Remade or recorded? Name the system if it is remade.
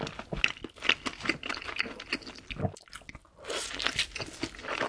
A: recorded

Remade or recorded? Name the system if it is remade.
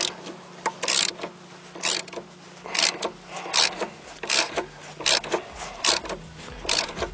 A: recorded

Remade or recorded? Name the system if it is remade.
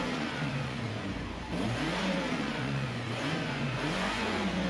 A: remade, vocoder, Vocos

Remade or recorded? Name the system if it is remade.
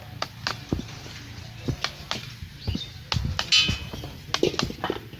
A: recorded